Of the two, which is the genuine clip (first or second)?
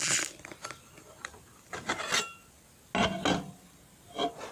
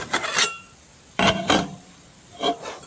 first